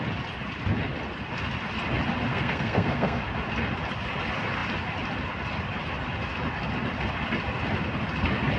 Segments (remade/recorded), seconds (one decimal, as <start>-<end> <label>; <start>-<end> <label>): 0.0-2.3 recorded; 2.3-3.2 remade; 3.2-8.6 recorded